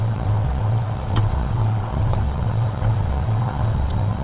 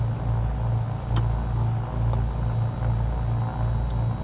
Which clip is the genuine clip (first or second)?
second